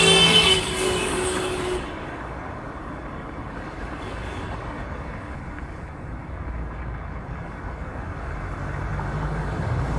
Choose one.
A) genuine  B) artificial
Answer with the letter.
B